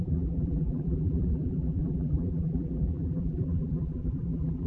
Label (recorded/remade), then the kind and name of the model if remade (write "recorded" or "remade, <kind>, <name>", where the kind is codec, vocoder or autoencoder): remade, vocoder, BigVGAN v2